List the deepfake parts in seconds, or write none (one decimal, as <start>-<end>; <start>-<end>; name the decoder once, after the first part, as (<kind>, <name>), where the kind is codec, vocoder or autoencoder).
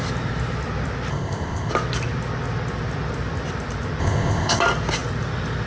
1.1-1.7 (codec, ZipCodec); 4.0-4.6